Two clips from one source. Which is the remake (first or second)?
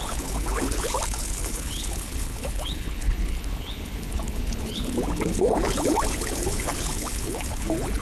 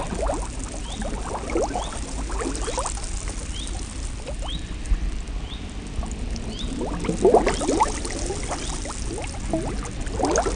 first